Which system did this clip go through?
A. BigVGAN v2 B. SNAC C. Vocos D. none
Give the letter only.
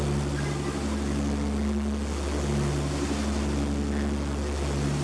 D